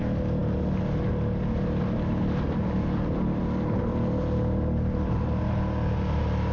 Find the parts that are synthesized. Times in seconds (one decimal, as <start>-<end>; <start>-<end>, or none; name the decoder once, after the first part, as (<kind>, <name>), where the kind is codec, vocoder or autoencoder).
none